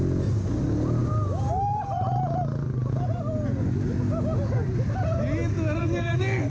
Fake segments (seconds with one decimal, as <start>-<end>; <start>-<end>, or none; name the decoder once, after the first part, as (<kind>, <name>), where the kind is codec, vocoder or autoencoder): 5.8-6.5 (codec, SNAC)